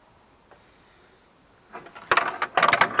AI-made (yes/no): no